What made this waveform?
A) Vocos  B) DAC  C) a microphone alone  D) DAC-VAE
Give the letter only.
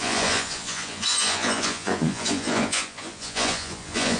A